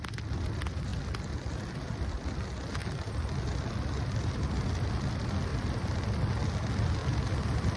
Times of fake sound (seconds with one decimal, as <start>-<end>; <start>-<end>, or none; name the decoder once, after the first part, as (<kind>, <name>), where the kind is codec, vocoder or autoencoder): 0.9-2.4 (vocoder, BigVGAN v2); 5.5-6.1; 7.0-7.8